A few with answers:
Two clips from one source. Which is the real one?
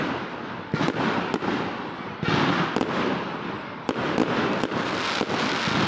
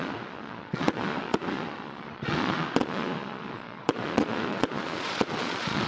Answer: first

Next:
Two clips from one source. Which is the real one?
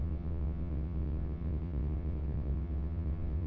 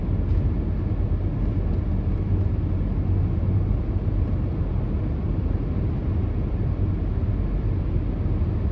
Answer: second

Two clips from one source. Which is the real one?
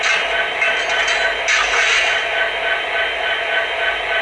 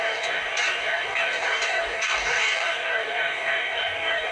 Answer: first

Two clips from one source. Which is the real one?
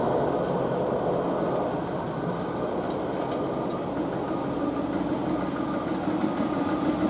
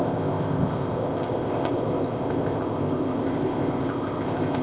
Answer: first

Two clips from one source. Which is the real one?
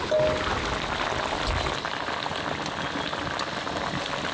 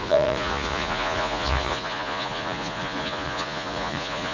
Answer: first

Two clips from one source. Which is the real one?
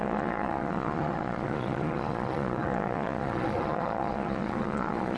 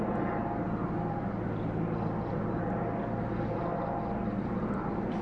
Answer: second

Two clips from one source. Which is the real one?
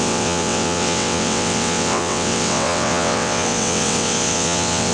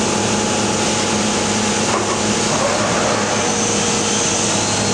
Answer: second